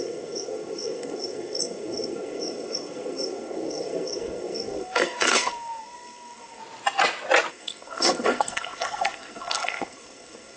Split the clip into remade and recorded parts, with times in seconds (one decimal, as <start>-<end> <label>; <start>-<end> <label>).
0.0-6.6 remade; 6.6-7.5 recorded; 7.5-10.6 remade